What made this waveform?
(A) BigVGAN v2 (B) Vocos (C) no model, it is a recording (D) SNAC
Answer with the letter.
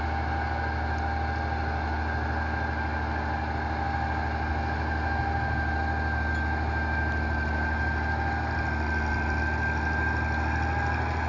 C